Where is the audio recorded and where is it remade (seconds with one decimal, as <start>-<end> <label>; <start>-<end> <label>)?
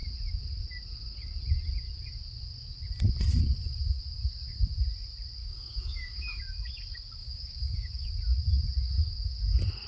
0.0-5.4 recorded; 5.4-6.4 remade; 6.4-7.2 recorded; 7.2-8.1 remade; 8.1-9.9 recorded